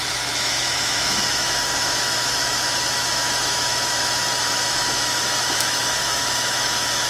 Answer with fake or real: fake